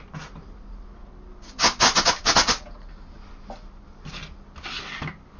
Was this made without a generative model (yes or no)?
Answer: yes